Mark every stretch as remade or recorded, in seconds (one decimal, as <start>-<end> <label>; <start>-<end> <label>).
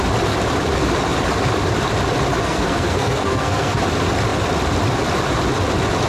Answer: 0.0-2.4 recorded; 2.4-3.8 remade; 3.8-6.1 recorded